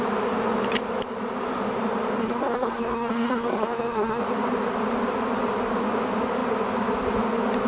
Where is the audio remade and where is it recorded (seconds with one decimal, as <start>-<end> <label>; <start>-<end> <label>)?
0.0-2.2 recorded; 2.2-4.2 remade; 4.2-7.7 recorded